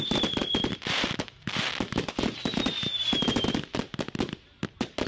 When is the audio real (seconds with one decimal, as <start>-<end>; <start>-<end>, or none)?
0.0-5.1